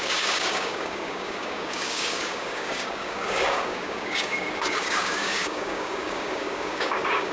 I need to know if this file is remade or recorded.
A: remade